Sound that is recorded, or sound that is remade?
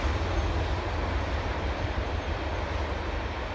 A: recorded